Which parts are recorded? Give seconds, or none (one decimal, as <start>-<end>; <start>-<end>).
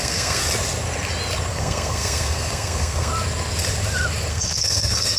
0.4-1.5; 3.1-4.3